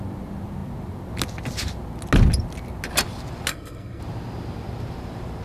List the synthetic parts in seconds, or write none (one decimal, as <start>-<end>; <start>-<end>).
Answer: 3.5-4.0